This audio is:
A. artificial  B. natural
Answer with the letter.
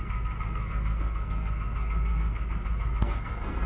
A